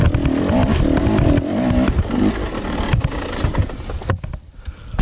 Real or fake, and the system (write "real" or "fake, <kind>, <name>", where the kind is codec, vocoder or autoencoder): real